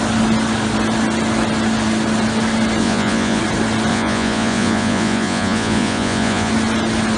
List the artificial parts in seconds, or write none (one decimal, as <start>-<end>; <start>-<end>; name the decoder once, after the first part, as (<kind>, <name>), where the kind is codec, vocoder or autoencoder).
2.8-3.4 (vocoder, Vocos); 3.9-6.5